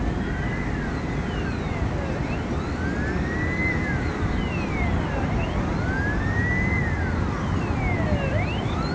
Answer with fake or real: real